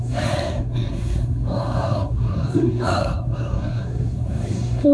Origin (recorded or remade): remade